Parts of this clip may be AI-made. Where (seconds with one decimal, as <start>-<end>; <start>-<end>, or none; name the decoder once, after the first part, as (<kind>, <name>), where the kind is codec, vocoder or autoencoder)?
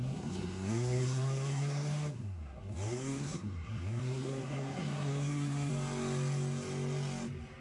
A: 0.0-5.7 (codec, SNAC)